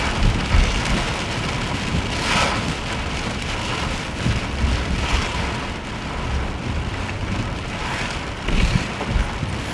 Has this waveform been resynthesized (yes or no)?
no